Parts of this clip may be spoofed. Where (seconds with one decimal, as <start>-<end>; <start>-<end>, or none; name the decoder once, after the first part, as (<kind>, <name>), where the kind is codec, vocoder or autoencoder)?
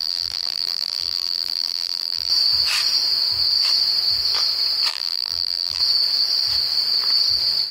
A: 0.0-2.3 (vocoder, BigVGAN v2); 4.9-5.8